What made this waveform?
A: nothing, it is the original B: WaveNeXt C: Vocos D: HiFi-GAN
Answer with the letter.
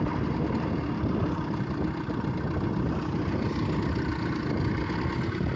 A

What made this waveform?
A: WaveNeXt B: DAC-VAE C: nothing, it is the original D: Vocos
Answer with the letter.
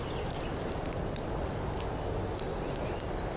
C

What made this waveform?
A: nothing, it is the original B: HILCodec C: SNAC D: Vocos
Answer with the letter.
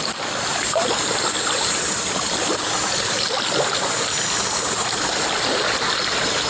A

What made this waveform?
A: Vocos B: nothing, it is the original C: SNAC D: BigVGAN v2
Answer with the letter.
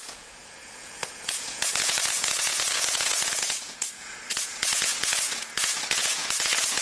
A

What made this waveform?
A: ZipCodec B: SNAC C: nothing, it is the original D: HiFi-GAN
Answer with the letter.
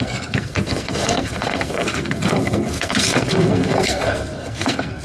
B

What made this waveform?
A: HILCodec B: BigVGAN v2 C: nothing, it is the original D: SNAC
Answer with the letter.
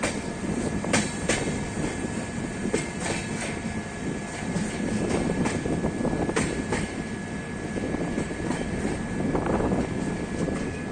C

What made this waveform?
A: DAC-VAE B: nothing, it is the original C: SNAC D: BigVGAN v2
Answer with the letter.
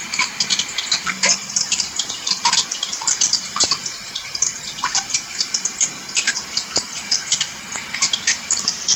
B